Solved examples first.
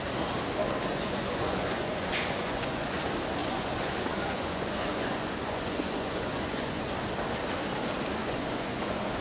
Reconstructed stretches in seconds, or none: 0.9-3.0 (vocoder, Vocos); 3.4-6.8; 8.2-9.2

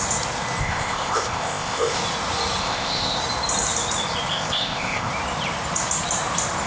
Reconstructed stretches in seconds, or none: 0.6-2.0 (codec, ZipCodec); 2.6-3.2; 4.3-5.1

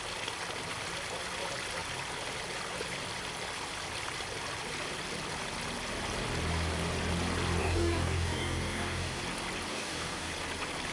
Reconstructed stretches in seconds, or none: 7.6-9.2 (codec, DAC); 9.7-10.3

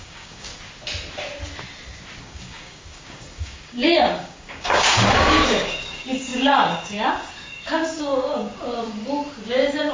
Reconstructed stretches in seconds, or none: 0.0-0.5 (codec, DAC); 2.2-8.7; 9.5-9.9

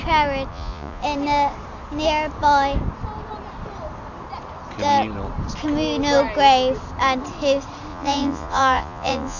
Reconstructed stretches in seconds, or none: 0.5-1.0 (vocoder, Vocos); 7.9-9.4

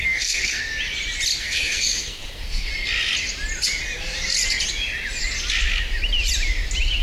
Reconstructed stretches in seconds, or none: 0.0-0.6 (codec, SNAC); 1.4-2.7

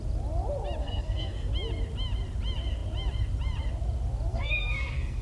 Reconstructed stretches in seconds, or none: 0.8-1.5 (codec, SNAC); 4.3-5.2

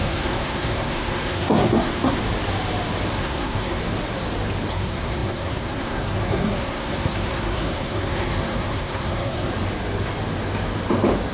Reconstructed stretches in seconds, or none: 0.0-2.2 (codec, SNAC); 3.1-3.8; 4.7-9.5